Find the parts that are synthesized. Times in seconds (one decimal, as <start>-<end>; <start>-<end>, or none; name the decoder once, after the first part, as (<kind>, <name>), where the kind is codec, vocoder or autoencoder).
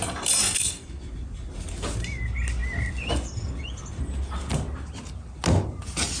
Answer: 0.4-1.0 (codec, SNAC)